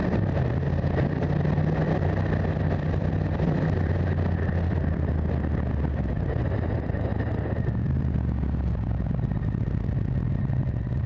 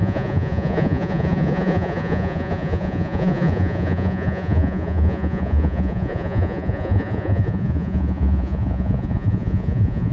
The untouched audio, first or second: first